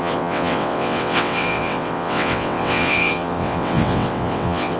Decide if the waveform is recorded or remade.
remade